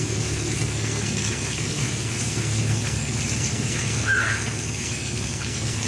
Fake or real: fake